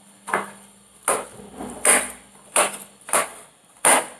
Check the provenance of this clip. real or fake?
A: real